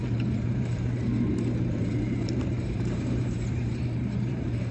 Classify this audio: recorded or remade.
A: remade